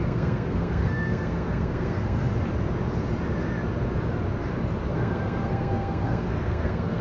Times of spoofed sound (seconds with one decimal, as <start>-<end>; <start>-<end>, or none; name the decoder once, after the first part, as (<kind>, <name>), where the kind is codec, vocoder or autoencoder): 0.0-2.2 (codec, SNAC); 4.9-7.0